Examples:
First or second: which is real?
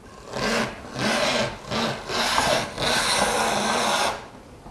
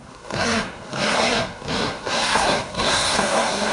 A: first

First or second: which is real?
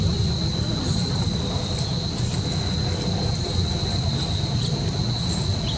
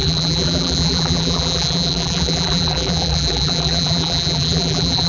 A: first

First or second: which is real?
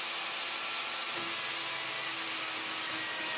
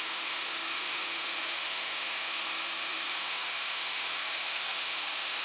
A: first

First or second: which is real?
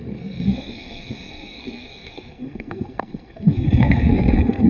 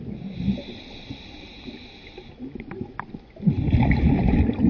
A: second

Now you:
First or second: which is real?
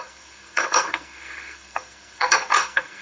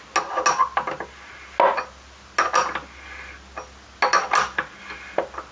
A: second